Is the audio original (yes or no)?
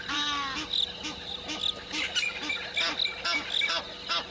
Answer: yes